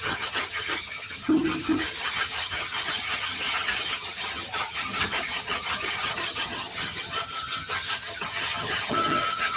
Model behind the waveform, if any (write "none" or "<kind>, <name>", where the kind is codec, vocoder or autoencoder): vocoder, HiFi-GAN